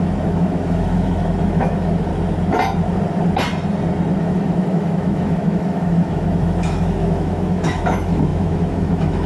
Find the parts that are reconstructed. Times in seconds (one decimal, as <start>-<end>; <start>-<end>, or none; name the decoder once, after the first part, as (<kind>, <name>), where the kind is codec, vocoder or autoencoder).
0.0-2.1 (autoencoder, DAC-VAE); 4.2-9.3